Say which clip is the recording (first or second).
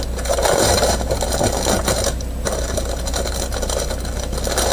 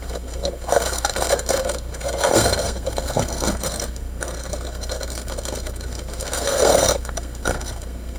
first